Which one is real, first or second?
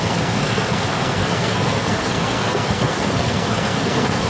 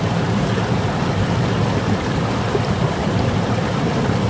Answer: second